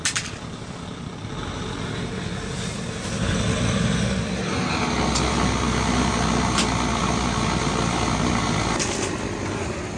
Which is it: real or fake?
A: real